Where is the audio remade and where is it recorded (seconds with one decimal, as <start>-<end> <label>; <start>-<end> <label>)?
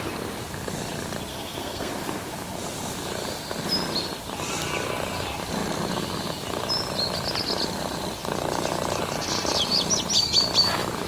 0.0-1.3 recorded; 1.3-1.9 remade; 1.9-11.1 recorded